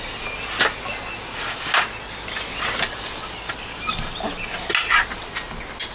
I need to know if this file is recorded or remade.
recorded